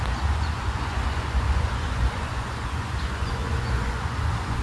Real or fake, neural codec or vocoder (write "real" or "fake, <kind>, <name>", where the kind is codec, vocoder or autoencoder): fake, vocoder, Vocos